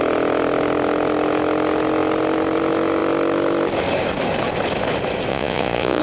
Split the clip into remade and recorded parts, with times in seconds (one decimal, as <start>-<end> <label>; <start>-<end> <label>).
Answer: 0.0-5.3 recorded; 5.3-6.0 remade